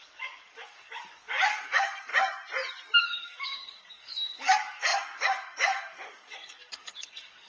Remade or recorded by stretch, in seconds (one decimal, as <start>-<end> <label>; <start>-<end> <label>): 0.0-2.1 remade; 2.1-3.0 recorded; 3.0-7.5 remade